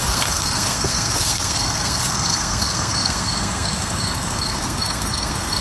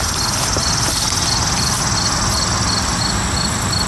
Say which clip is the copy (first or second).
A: first